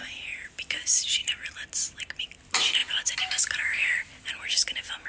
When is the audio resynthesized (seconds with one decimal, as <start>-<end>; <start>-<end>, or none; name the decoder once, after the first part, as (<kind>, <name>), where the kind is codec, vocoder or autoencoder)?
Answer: 0.0-1.7 (vocoder, BigVGAN v2)